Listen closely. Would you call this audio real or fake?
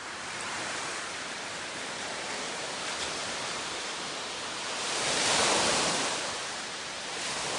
fake